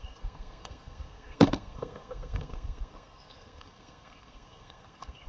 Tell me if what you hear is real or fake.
fake